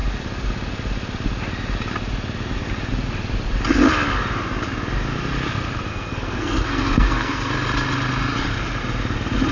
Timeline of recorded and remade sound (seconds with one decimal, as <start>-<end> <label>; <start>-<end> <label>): 0.0-5.9 recorded; 5.9-7.5 remade; 7.5-9.5 recorded